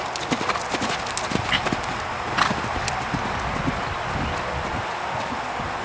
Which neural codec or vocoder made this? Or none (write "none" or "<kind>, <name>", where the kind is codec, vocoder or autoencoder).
none